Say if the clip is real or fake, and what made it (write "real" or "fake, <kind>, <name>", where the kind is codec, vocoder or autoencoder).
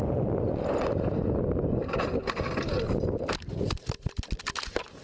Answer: real